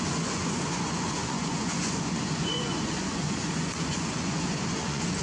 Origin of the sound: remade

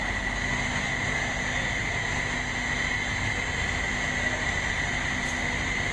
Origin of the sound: recorded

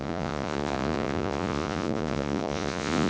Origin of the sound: remade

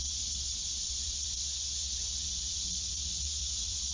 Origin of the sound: remade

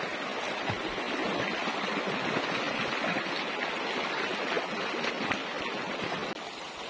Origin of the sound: recorded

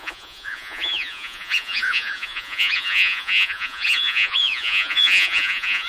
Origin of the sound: remade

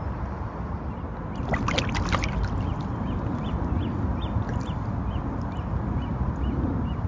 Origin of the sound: recorded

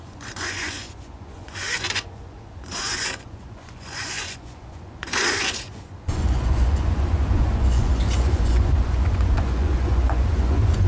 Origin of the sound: remade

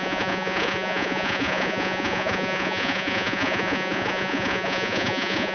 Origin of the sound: remade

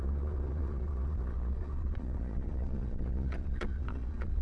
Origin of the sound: remade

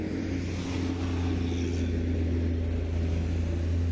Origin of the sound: recorded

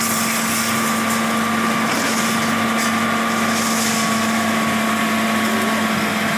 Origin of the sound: recorded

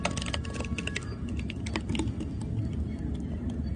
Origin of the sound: recorded